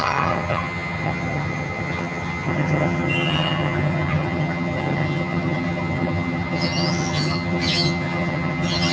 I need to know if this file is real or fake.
fake